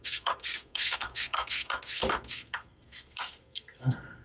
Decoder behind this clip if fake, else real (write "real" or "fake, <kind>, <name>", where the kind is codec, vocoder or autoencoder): fake, codec, SNAC